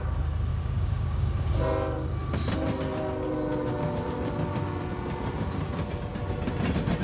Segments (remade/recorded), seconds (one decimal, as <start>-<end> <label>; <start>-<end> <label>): 0.0-0.5 recorded; 0.5-1.5 remade; 1.5-7.0 recorded